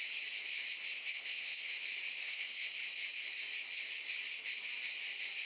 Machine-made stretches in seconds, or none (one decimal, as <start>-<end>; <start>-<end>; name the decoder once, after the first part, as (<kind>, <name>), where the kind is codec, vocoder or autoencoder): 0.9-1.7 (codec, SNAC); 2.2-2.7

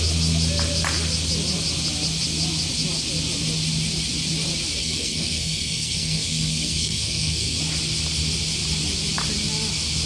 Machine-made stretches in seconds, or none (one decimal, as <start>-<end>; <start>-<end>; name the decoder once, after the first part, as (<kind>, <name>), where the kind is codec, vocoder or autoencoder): 4.8-7.6 (codec, SNAC)

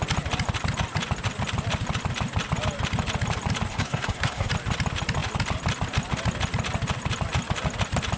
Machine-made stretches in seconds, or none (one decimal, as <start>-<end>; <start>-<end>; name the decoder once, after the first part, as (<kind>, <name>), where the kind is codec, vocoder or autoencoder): 3.7-4.5 (codec, SNAC)

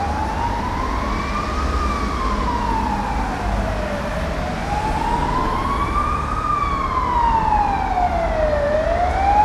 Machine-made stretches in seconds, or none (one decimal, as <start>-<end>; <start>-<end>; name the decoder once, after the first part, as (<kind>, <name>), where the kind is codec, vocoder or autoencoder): none

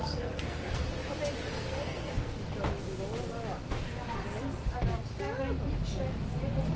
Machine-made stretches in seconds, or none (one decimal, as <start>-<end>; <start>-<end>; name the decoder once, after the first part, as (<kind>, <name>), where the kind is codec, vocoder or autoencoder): 0.0-0.8 (codec, SNAC); 1.5-2.4

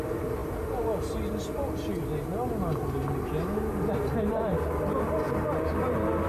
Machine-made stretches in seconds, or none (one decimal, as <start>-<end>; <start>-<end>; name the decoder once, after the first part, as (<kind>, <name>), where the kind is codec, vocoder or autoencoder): none

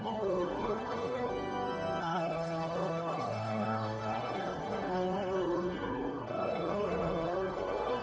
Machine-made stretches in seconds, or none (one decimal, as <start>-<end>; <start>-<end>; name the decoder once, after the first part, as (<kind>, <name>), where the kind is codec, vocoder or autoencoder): 0.0-1.3 (codec, SNAC); 2.0-8.0